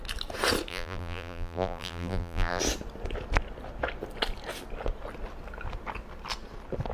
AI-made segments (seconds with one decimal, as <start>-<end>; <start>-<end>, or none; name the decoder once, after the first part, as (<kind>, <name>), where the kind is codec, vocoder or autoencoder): 0.7-2.6 (vocoder, BigVGAN v2)